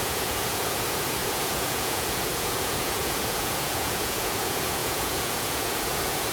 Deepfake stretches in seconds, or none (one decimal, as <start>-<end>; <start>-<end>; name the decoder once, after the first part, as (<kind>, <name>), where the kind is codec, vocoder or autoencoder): 0.0-6.3 (vocoder, Vocos)